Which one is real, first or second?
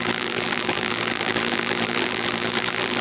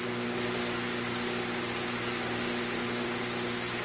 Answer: second